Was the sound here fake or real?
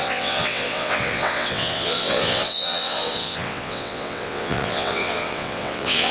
fake